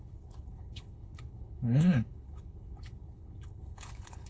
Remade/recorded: remade